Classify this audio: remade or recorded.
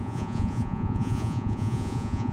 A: remade